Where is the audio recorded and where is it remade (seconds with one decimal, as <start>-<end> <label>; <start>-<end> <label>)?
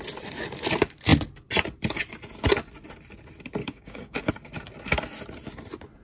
0.0-3.6 recorded; 3.6-4.3 remade; 4.3-6.0 recorded